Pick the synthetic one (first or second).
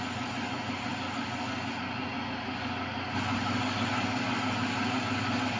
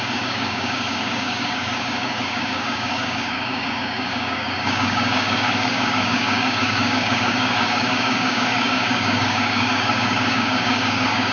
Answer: second